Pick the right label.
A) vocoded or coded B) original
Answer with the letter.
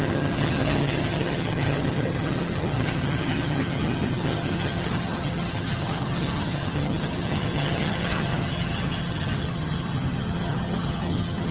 A